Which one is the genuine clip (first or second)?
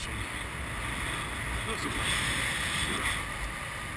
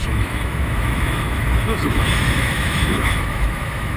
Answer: first